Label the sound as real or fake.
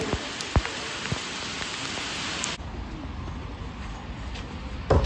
real